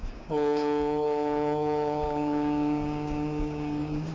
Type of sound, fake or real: fake